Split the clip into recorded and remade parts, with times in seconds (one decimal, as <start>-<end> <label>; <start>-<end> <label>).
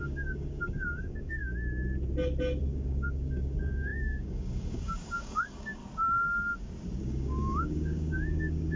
0.0-1.4 remade; 1.4-2.6 recorded; 2.6-5.8 remade; 5.8-7.0 recorded; 7.0-8.8 remade